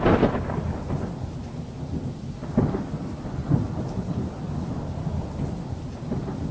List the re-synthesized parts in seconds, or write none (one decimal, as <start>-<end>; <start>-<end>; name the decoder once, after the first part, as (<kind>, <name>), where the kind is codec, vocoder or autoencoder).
none